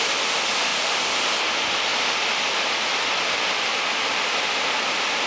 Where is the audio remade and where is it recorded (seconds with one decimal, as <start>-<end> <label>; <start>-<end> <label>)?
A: 0.0-0.7 recorded; 0.7-1.4 remade; 1.4-1.9 recorded; 1.9-5.3 remade